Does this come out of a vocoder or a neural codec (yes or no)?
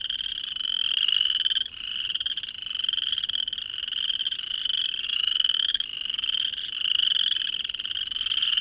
no